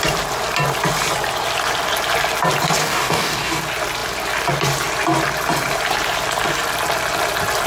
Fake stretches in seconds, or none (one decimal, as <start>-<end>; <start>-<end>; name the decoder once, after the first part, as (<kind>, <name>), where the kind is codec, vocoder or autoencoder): 2.8-3.6 (codec, DAC)

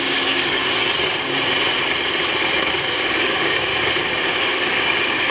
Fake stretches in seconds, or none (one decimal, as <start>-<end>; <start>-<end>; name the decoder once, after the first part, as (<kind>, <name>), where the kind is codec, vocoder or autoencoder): 0.0-0.6 (codec, DAC); 2.7-3.7; 4.3-5.3